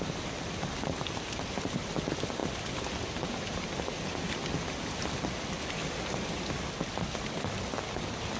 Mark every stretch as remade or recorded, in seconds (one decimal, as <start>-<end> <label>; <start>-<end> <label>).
0.0-8.4 recorded